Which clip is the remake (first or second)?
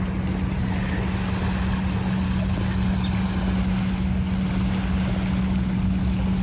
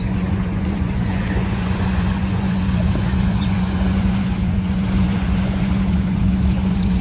second